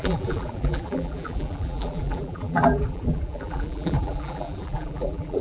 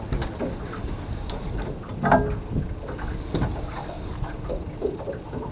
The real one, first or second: second